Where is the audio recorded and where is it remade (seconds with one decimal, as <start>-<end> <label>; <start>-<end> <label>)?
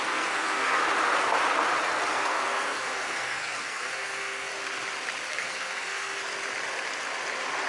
0.0-0.8 remade; 0.8-2.1 recorded; 2.1-4.5 remade; 4.5-5.3 recorded; 5.3-6.2 remade; 6.2-7.7 recorded